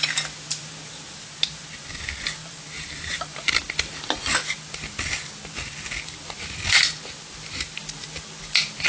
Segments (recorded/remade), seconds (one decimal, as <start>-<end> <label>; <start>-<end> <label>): 0.0-2.4 recorded; 2.4-3.5 remade; 3.5-8.9 recorded